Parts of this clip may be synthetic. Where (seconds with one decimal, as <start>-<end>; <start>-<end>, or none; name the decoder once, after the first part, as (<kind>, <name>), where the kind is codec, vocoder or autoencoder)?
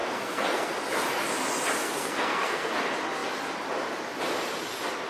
0.0-0.7 (codec, SNAC); 1.8-2.7